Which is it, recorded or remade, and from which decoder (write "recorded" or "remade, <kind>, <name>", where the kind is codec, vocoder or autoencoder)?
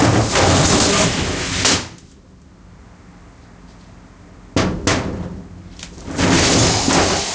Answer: recorded